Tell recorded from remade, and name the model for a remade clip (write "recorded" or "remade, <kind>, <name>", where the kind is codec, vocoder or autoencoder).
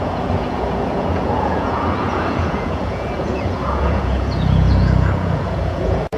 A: remade, vocoder, Vocos